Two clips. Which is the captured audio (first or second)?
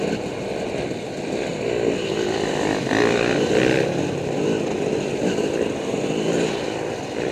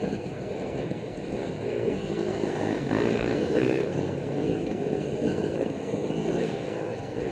first